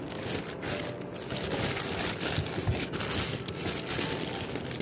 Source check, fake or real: real